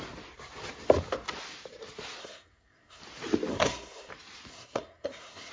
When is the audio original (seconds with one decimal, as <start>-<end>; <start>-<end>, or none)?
0.0-2.2; 3.0-3.5; 4.1-4.5